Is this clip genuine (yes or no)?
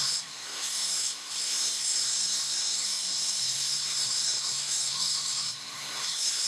no